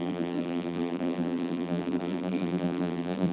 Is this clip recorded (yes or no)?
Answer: no